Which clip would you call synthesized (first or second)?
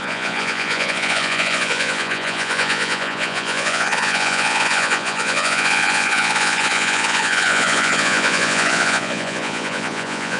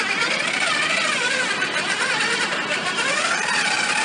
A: first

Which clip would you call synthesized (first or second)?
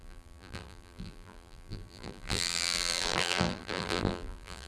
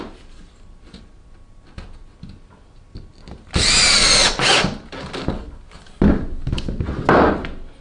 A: first